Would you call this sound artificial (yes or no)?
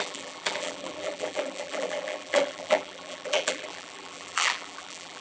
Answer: yes